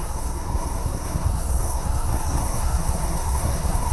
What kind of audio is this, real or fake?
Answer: fake